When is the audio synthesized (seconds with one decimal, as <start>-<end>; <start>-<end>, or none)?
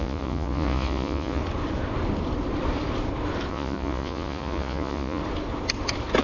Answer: 0.0-1.4; 3.5-5.2